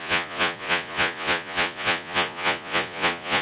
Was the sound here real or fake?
fake